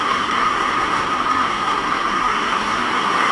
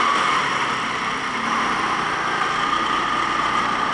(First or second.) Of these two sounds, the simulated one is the first